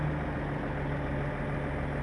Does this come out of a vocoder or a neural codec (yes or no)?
no